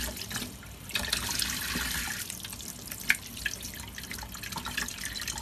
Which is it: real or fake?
real